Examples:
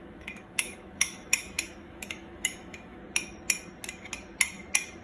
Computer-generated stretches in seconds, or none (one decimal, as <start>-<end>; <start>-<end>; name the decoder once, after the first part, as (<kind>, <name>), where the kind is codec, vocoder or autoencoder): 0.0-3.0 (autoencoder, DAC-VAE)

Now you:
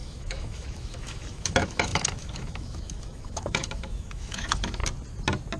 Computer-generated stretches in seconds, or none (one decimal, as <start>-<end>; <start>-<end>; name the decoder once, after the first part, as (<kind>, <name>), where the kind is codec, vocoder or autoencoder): 0.0-4.8 (autoencoder, DAC-VAE)

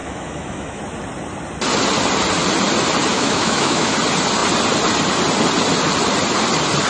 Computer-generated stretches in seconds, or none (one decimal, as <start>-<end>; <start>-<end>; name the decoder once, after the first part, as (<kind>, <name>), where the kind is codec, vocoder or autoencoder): 0.0-0.8 (autoencoder, DAC-VAE); 3.1-3.9

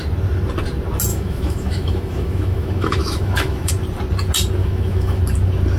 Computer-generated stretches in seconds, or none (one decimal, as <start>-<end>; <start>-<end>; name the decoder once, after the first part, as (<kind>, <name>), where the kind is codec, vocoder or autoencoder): 1.1-3.7 (autoencoder, DAC-VAE); 4.6-5.2

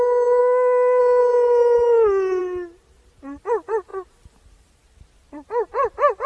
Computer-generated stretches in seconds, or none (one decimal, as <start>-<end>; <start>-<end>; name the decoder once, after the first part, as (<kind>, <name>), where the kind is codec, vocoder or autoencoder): 0.4-1.0 (autoencoder, DAC-VAE)

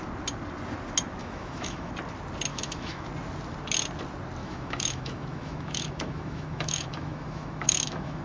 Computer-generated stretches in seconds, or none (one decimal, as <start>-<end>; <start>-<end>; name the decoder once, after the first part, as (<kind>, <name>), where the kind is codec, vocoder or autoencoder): 1.2-1.9 (autoencoder, DAC-VAE); 2.5-3.0; 4.4-8.2